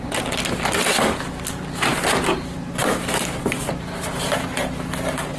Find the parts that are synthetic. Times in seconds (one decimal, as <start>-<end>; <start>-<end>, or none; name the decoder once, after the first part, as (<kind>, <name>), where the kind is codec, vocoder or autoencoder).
none